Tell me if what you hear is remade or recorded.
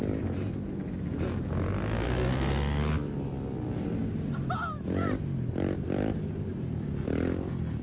recorded